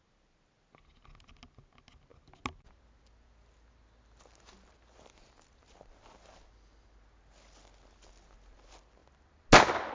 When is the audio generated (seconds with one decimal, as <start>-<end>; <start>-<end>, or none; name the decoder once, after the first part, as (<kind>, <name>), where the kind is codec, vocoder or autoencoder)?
none